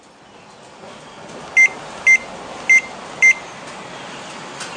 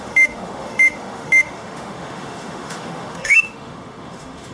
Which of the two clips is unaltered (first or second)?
first